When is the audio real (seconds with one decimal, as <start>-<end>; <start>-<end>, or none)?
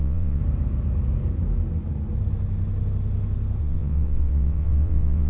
0.4-3.6